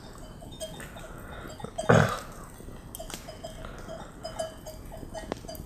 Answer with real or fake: real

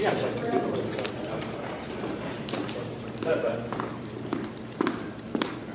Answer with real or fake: fake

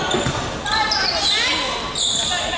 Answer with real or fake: real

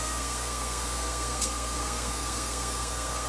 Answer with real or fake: fake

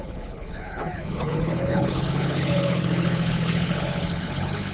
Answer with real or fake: fake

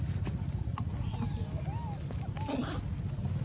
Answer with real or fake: real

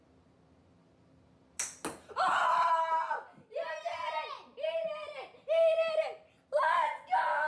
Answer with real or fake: real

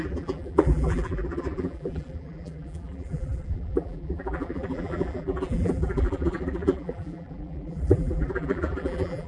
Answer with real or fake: fake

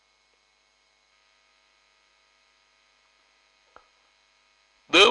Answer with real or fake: real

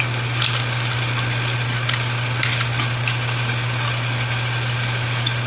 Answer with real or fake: real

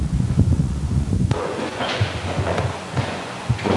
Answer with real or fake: fake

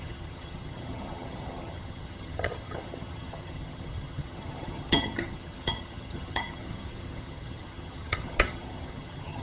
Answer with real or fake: fake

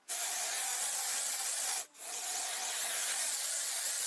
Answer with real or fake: real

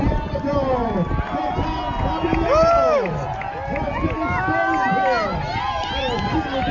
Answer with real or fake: real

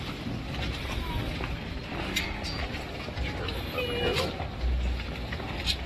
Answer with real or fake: real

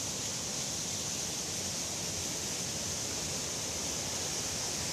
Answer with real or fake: real